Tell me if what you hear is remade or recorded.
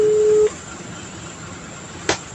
recorded